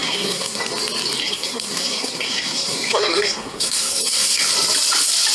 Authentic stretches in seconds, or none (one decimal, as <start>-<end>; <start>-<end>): 0.6-1.2; 4.4-5.3